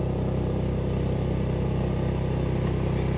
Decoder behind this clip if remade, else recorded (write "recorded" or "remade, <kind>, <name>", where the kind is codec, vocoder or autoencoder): recorded